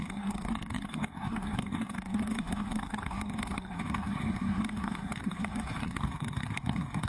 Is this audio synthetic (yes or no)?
yes